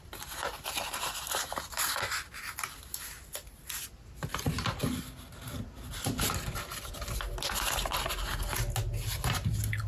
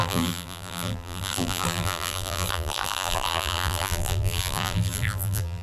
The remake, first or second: second